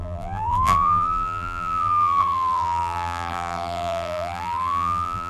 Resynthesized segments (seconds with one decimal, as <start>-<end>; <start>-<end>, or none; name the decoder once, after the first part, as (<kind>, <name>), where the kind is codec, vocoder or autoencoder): 0.0-5.3 (vocoder, BigVGAN v2)